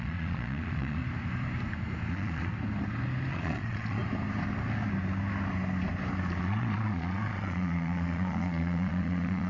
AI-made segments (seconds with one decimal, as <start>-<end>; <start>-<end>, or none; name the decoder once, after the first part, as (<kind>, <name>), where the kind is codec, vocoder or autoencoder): 0.0-1.0 (vocoder, Vocos); 2.1-2.5; 3.3-4.0; 6.4-9.5